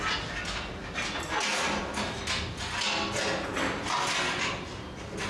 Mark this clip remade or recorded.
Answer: recorded